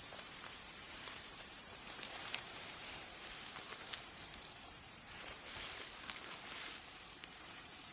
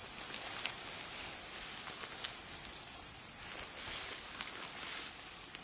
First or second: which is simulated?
first